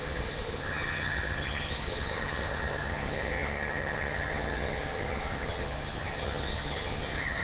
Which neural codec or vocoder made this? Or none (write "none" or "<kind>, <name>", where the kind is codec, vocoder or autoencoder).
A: vocoder, HiFi-GAN